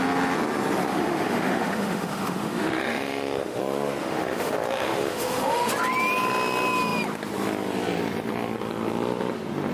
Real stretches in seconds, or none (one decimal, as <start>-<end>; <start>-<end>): 0.0-0.9; 3.6-4.0; 5.7-9.7